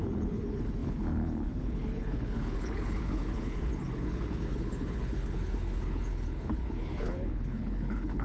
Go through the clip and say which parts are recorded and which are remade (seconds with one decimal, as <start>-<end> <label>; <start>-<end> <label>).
0.0-8.2 remade